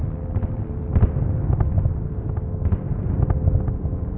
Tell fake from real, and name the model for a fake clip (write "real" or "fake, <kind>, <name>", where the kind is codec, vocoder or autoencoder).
real